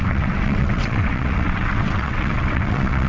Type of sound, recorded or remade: remade